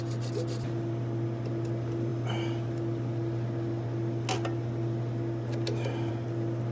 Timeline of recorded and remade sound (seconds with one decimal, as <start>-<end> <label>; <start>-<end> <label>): 0.0-6.7 recorded